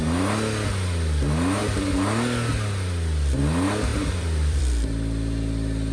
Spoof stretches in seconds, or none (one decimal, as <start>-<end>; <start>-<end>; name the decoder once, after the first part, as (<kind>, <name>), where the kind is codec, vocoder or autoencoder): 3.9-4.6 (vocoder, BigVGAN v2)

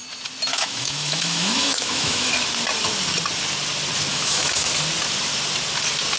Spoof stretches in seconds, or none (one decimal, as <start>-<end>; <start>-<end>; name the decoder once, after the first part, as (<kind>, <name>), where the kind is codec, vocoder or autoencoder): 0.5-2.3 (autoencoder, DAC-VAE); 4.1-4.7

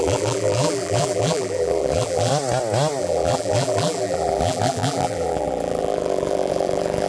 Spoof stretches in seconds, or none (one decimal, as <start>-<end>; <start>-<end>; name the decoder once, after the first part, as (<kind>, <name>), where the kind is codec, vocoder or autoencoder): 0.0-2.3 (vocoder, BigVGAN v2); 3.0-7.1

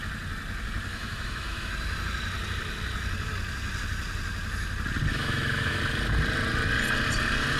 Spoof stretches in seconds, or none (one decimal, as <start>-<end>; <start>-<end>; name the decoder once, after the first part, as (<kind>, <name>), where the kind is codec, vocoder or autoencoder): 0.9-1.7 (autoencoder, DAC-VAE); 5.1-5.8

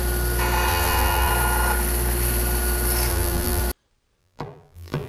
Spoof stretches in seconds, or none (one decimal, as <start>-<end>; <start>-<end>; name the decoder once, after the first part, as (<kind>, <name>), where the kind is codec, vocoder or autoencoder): 0.7-1.3 (vocoder, BigVGAN v2); 3.1-3.6; 4.2-5.1